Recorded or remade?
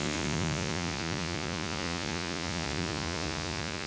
remade